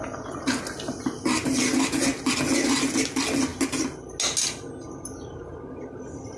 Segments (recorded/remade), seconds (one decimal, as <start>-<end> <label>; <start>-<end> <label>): 0.0-6.4 recorded